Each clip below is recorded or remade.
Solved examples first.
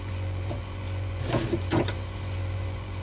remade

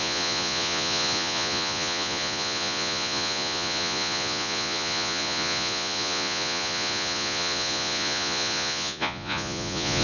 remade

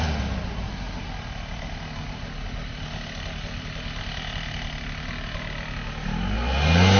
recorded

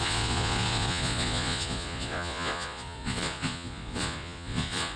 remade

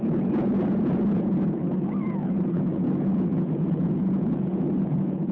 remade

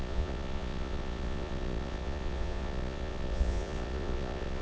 remade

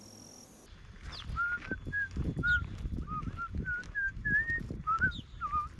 recorded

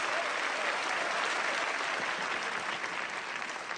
recorded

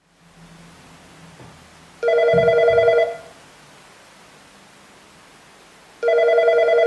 recorded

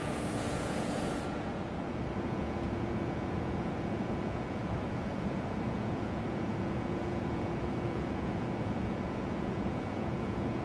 remade